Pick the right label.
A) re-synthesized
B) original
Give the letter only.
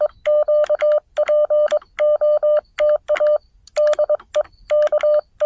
B